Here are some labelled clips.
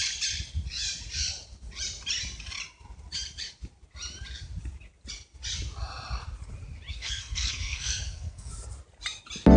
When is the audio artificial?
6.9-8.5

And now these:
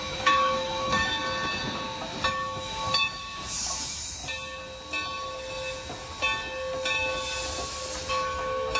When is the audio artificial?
0.0-1.1; 2.3-4.2; 8.1-8.8